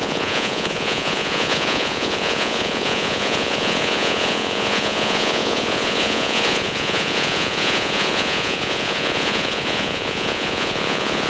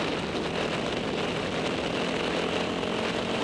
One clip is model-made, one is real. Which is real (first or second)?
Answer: second